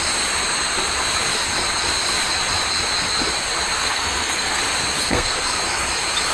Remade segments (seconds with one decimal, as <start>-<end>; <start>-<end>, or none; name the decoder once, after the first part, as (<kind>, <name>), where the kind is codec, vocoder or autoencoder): 3.8-4.6 (codec, SNAC); 5.0-5.6